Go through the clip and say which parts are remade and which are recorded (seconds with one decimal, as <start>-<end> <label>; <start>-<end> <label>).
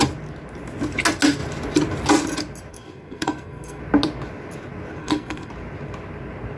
0.0-2.7 recorded; 2.7-3.8 remade; 3.8-5.0 recorded; 5.0-5.5 remade; 5.5-6.6 recorded